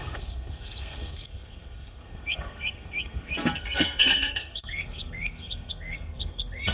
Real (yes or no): no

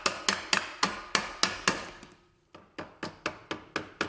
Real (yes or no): yes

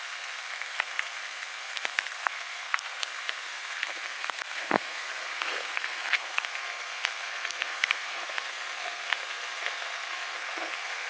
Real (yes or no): no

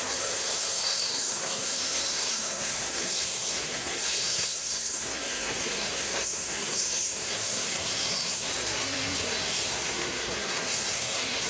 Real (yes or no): no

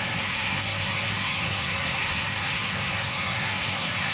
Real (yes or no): no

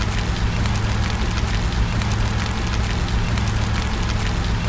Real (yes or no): yes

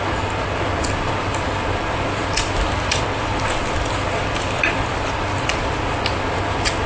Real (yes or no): yes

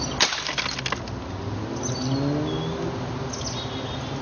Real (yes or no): yes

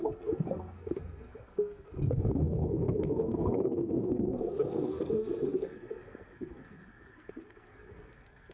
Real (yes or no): no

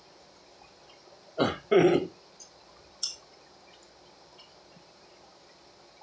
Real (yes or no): yes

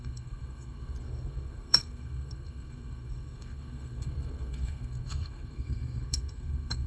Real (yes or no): no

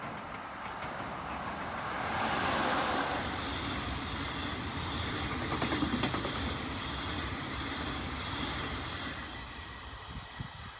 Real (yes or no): yes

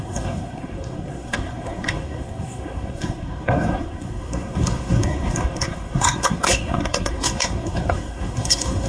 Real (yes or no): no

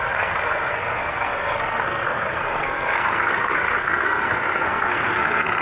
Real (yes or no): no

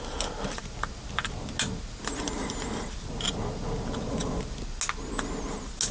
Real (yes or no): yes